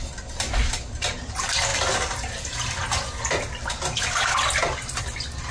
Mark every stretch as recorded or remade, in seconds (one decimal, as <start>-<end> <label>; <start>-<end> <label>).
0.0-5.5 recorded